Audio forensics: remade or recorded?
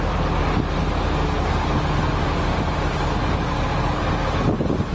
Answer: recorded